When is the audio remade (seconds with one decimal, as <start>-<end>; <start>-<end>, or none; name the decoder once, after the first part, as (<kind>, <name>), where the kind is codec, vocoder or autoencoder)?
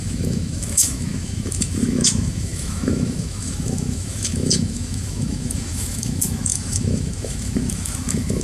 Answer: 0.0-8.4 (autoencoder, DAC-VAE)